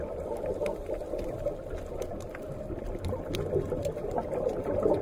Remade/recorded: recorded